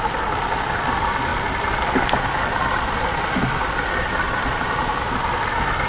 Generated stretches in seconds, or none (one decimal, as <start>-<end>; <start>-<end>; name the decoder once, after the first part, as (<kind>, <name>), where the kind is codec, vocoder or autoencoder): none